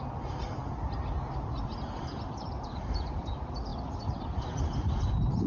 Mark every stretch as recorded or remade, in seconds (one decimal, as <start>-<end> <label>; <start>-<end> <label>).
0.0-5.5 recorded